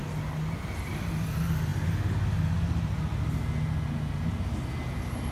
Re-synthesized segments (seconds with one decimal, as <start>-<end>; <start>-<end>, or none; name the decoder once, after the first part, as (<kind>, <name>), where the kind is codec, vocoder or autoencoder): none